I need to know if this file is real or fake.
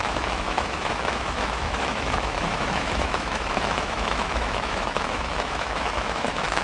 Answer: fake